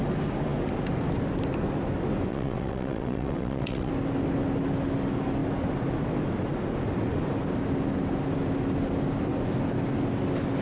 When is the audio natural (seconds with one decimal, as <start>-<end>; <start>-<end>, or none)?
0.0-2.3; 3.9-10.6